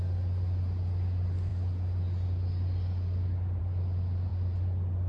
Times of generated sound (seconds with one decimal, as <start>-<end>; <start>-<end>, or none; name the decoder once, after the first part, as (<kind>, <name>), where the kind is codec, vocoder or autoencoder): none